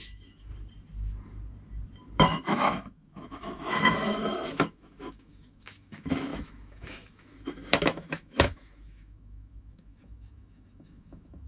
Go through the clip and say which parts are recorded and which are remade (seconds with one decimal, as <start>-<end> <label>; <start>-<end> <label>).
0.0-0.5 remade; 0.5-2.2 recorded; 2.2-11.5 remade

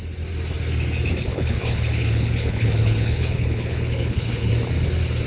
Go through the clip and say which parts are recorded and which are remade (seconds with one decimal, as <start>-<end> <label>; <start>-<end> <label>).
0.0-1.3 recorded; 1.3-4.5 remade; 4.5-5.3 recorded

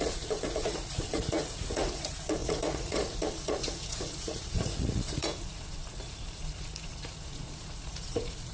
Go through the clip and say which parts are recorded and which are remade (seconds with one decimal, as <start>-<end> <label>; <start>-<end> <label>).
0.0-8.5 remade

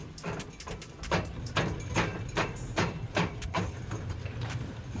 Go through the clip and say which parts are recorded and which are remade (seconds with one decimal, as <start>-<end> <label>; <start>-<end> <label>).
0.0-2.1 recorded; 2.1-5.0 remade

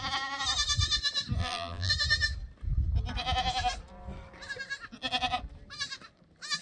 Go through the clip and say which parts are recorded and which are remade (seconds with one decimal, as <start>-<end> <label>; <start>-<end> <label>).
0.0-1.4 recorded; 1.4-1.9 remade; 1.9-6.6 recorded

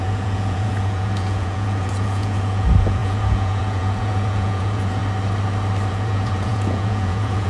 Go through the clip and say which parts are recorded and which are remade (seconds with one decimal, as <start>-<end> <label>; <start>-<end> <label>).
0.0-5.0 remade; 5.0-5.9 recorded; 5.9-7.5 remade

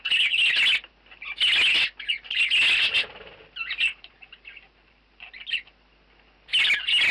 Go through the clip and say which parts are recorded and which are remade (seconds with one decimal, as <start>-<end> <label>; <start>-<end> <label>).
0.0-3.9 recorded; 3.9-5.7 remade; 5.7-7.1 recorded

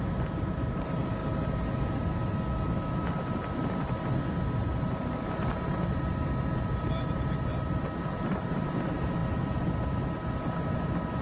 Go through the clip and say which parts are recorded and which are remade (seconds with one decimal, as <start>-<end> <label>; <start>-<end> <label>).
0.0-11.2 recorded